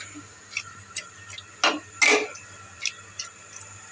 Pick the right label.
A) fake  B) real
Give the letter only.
B